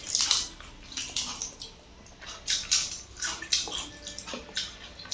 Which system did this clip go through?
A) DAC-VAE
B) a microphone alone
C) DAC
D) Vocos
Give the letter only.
B